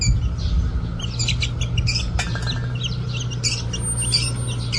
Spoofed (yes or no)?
no